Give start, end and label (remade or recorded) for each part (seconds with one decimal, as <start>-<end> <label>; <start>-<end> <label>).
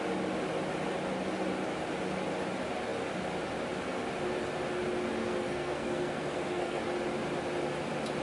0.0-5.2 recorded; 5.2-6.8 remade; 6.8-8.2 recorded